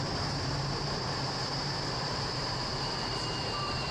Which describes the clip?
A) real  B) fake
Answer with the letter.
B